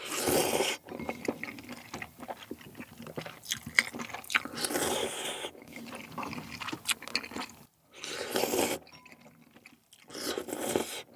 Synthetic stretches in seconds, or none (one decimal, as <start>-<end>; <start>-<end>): 5.0-5.8